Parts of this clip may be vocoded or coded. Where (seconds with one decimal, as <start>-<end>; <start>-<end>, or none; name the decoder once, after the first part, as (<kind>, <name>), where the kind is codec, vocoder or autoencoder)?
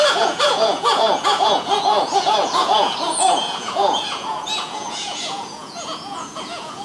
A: 0.0-6.8 (vocoder, Vocos)